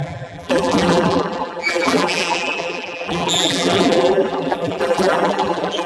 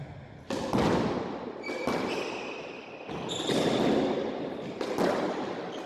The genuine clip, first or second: second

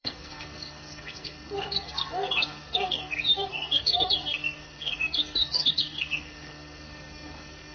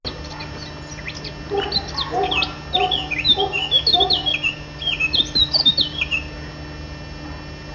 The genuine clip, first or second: second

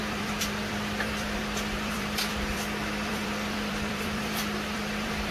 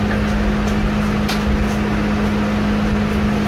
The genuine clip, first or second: second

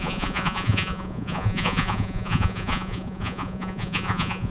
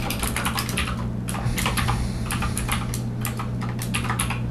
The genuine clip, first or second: second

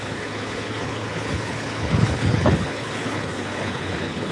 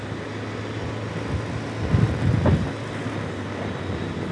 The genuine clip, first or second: second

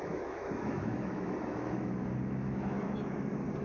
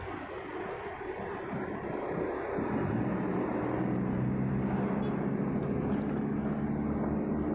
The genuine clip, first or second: second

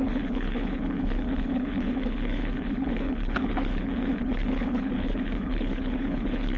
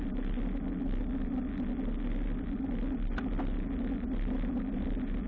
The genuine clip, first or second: second